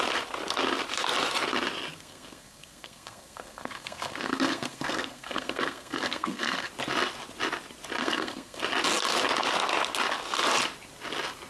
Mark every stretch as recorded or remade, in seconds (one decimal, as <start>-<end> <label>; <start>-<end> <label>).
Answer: 0.0-1.9 recorded; 1.9-6.7 remade; 6.7-8.0 recorded; 8.0-8.6 remade; 8.6-11.5 recorded